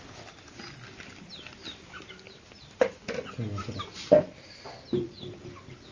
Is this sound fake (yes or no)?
no